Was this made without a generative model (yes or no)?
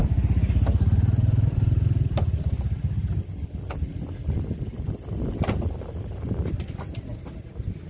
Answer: yes